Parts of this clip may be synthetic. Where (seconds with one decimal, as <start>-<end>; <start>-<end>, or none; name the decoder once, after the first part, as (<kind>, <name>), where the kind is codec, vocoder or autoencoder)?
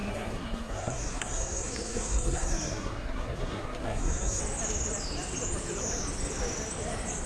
0.0-4.4 (codec, SNAC)